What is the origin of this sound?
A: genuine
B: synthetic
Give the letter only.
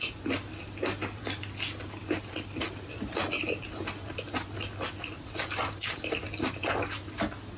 A